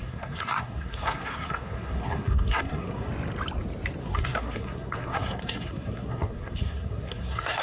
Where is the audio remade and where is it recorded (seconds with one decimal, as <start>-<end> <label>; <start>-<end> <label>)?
0.0-3.1 remade; 3.1-4.0 recorded; 4.0-7.6 remade